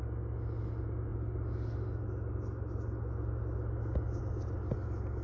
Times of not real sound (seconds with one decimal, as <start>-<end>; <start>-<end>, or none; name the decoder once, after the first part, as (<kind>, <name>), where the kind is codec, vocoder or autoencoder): none